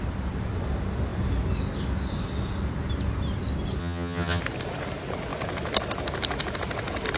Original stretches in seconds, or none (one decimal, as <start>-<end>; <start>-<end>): 0.0-3.8; 4.4-7.2